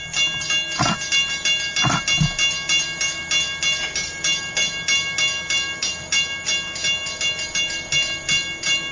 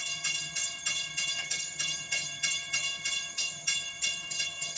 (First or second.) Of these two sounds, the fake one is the second